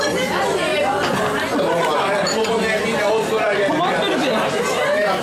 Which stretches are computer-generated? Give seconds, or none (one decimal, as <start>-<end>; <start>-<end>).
none